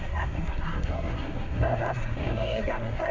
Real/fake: fake